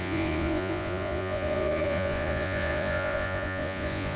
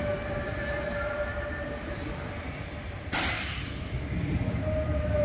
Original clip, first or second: second